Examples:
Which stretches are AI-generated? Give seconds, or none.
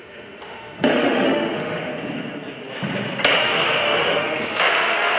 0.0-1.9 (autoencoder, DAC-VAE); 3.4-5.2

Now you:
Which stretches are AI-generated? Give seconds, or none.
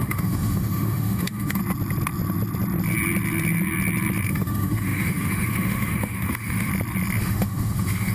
0.0-1.6 (autoencoder, DAC-VAE); 4.3-6.7; 7.2-8.1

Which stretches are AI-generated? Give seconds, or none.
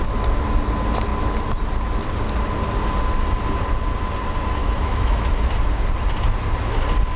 4.6-5.5 (autoencoder, DAC-VAE)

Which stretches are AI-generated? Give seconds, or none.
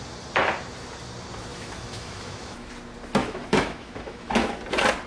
1.5-2.7 (autoencoder, DAC-VAE); 3.2-4.6